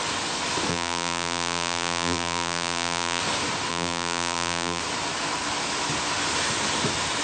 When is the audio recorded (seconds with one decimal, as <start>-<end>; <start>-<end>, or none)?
0.0-0.7; 3.2-3.7; 4.8-7.2